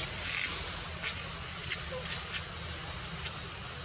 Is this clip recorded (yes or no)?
yes